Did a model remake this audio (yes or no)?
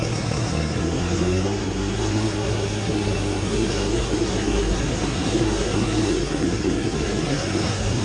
yes